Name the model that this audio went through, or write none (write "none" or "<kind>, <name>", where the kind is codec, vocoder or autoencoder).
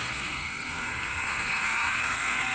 codec, SNAC